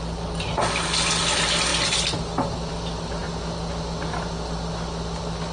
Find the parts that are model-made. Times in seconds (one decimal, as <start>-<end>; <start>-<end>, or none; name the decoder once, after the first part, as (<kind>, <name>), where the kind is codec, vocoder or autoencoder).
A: none